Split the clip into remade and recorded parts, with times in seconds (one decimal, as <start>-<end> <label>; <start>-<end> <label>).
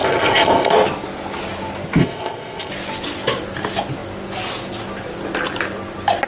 0.0-0.7 remade; 0.7-2.0 recorded; 2.0-2.7 remade; 2.7-6.3 recorded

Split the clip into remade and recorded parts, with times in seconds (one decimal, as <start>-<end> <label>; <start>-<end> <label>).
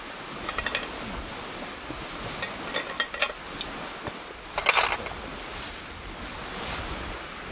0.0-7.5 recorded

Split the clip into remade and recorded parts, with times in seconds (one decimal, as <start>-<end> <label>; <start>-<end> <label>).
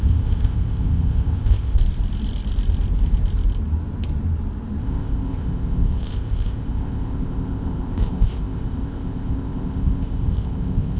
0.0-1.8 remade; 1.8-4.8 recorded; 4.8-11.0 remade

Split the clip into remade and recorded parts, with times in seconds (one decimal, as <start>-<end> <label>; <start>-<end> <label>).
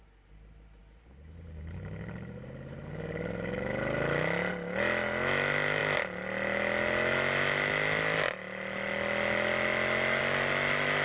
0.0-11.0 recorded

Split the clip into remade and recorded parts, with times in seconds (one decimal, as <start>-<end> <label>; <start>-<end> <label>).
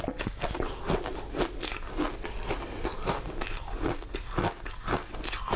0.0-5.6 recorded